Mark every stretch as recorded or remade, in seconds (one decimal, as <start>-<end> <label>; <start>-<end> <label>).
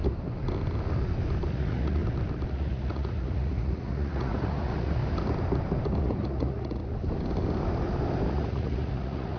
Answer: 0.0-1.5 recorded; 1.5-2.0 remade; 2.0-2.5 recorded; 2.5-5.0 remade; 5.0-6.0 recorded; 6.0-6.8 remade; 6.8-8.3 recorded; 8.3-9.4 remade